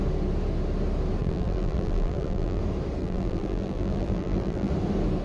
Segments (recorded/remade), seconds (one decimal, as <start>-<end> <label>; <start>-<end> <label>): 0.0-1.2 recorded; 1.2-2.6 remade; 2.6-3.0 recorded; 3.0-4.7 remade; 4.7-5.2 recorded